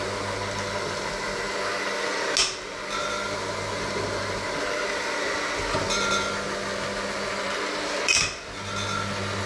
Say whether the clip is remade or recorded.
recorded